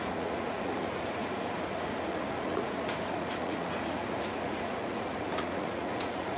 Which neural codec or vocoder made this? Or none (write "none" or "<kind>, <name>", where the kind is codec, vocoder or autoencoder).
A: vocoder, Vocos